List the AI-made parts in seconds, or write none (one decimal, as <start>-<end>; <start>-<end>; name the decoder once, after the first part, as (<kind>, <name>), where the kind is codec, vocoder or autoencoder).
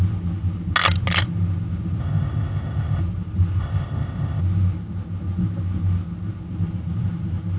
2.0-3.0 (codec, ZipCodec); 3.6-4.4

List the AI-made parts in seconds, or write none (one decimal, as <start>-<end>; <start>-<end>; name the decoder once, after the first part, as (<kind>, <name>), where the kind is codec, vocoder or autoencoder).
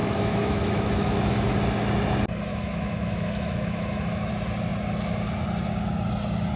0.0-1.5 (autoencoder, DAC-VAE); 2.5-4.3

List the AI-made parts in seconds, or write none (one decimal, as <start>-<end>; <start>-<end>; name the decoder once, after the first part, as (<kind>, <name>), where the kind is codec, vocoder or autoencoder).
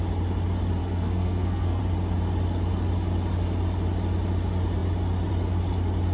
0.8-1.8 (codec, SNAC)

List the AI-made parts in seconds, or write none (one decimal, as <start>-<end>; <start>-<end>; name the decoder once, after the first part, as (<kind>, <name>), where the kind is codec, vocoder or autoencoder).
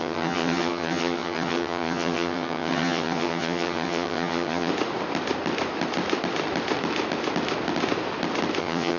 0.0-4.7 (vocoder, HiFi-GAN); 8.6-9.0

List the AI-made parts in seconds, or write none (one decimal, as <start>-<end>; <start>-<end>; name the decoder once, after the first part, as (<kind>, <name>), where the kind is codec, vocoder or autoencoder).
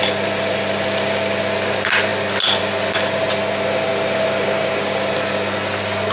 none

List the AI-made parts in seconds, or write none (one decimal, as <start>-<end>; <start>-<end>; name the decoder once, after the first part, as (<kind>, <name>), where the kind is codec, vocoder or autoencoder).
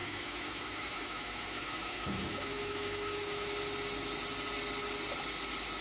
0.0-3.5 (autoencoder, DAC-VAE)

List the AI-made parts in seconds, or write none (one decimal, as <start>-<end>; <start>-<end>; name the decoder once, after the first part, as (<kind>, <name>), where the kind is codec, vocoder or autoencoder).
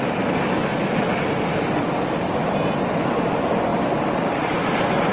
none